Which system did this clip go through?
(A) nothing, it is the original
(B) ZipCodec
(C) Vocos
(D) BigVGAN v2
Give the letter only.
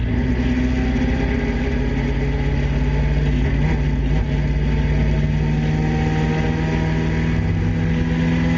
A